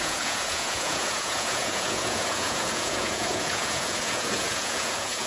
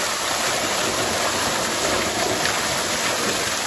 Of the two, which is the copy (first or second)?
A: first